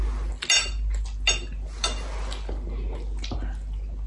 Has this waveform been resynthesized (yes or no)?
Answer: no